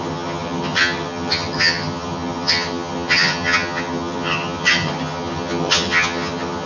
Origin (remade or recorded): remade